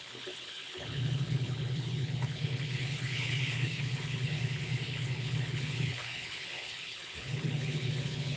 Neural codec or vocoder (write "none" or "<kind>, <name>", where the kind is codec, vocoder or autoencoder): codec, HILCodec